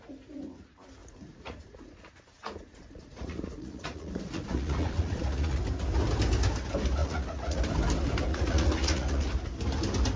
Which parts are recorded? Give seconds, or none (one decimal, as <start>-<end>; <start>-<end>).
0.0-1.0; 5.6-7.0; 7.6-8.3; 9.3-10.2